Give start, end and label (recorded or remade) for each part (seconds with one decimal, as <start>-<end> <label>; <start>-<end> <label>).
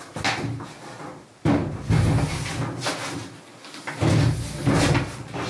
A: 0.0-5.5 recorded